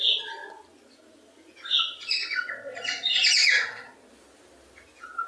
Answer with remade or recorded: recorded